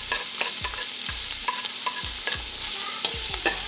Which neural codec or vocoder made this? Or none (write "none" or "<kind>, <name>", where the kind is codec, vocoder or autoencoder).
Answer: none